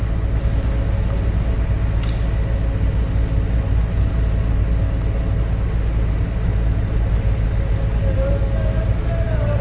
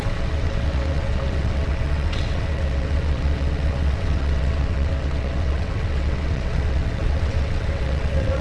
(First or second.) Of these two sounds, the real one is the first